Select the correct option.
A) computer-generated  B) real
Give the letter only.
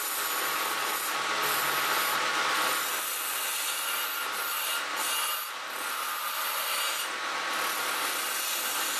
B